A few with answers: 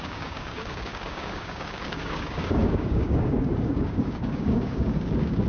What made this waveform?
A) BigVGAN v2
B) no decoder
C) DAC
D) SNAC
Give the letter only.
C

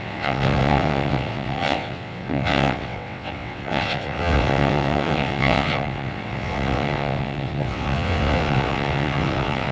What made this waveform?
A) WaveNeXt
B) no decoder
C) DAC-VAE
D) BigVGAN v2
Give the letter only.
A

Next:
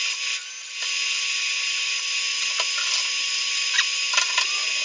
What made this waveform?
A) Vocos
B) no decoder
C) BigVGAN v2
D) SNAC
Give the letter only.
B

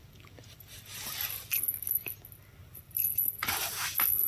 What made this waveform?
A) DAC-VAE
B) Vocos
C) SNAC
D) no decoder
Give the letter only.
D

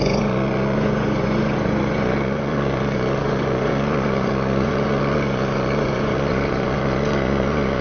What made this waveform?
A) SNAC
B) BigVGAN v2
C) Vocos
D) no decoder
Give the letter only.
C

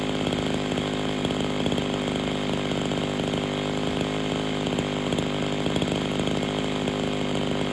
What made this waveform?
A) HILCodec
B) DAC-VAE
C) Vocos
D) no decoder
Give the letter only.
D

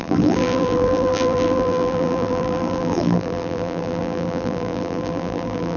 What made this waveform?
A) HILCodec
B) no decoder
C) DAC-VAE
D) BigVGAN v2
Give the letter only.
D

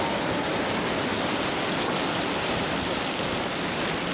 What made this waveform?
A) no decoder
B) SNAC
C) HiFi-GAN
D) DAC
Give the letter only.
A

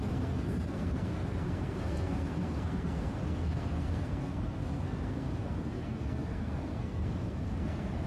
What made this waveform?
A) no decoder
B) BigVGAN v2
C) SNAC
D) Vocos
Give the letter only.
C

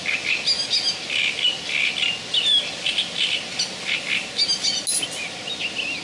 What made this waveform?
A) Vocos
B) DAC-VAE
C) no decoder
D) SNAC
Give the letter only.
C